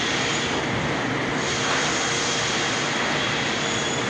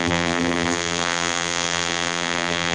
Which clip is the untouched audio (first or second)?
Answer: first